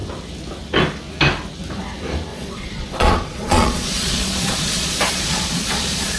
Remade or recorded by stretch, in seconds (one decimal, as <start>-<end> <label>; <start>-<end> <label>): 0.0-2.3 recorded; 2.3-6.2 remade